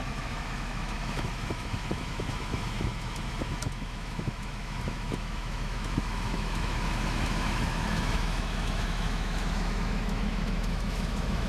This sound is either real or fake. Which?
fake